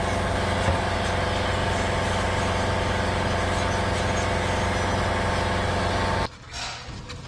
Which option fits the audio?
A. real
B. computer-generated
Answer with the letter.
A